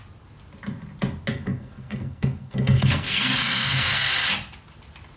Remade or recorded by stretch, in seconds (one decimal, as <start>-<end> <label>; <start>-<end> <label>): 0.0-1.3 recorded; 1.3-4.1 remade; 4.1-5.2 recorded